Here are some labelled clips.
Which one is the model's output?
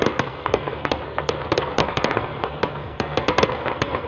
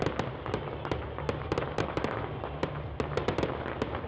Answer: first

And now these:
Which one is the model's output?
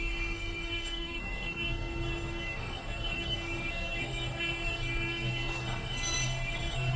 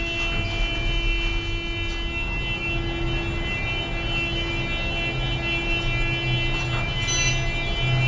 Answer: first